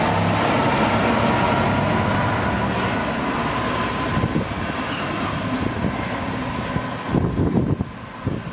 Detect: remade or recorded recorded